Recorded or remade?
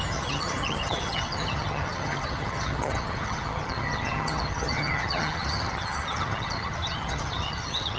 remade